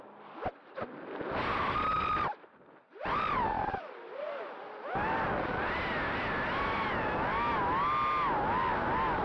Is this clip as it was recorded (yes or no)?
yes